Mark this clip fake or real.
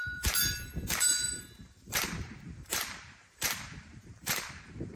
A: fake